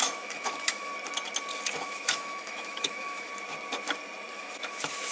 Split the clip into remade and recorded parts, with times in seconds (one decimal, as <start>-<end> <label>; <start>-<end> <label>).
0.0-0.9 remade; 0.9-1.8 recorded; 1.8-3.3 remade; 3.3-4.3 recorded; 4.3-5.1 remade